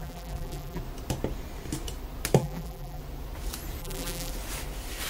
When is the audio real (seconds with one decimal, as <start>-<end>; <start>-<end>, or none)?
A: 0.8-2.4; 3.0-3.8; 4.3-5.1